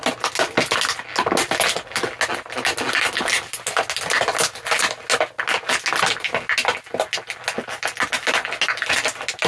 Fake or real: real